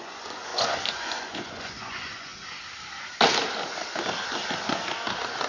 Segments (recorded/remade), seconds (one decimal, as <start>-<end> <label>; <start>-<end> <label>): 0.0-2.3 remade; 2.3-5.5 recorded